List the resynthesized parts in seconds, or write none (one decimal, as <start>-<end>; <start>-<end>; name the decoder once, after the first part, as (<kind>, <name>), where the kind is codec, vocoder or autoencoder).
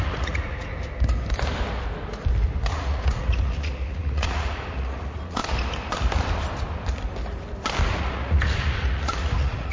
0.0-0.7 (vocoder, Vocos); 2.7-5.4; 8.0-9.7